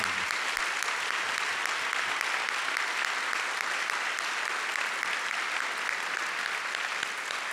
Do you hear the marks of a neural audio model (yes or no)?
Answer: no